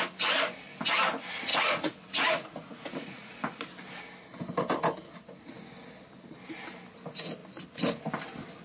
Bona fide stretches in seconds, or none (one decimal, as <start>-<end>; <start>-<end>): 0.0-1.5; 3.3-8.6

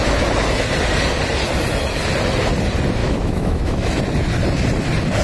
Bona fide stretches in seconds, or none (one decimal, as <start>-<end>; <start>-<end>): 0.0-3.0; 3.9-5.2

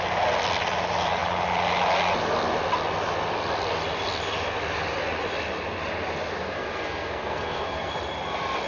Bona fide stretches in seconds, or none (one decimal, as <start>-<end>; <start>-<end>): 0.0-6.4; 7.9-8.7

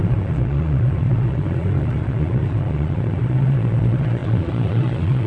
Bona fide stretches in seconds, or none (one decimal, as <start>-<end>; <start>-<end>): none

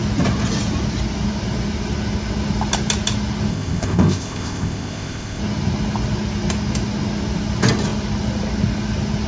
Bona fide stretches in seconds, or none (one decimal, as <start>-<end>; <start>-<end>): 0.0-3.5; 5.4-9.3

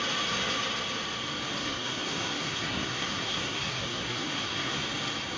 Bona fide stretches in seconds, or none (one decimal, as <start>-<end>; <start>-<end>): 0.0-1.6; 4.8-5.4

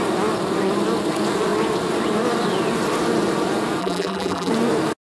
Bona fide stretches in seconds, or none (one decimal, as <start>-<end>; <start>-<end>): 0.0-3.8; 4.5-5.2